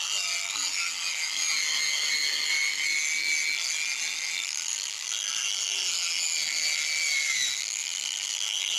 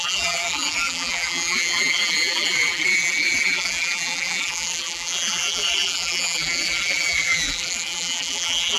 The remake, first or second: second